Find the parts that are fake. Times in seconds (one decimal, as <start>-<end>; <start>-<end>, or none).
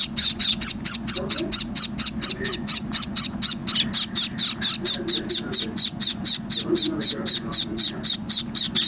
0.0-3.6; 5.3-8.9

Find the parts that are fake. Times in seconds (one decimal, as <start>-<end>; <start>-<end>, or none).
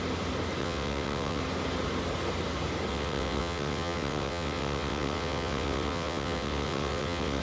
0.6-1.4; 2.9-7.4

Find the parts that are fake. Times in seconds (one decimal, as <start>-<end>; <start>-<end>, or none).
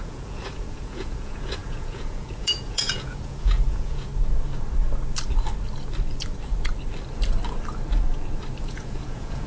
0.0-4.1; 8.6-9.5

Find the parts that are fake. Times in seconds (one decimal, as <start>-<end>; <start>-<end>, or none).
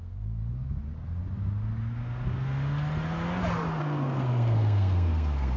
0.0-0.4; 3.8-5.6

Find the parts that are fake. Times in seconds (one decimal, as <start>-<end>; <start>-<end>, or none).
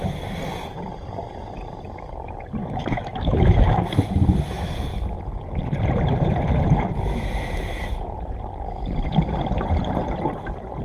2.6-4.1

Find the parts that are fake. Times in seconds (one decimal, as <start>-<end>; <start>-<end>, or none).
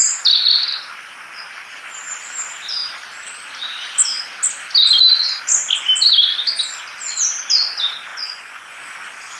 8.1-8.8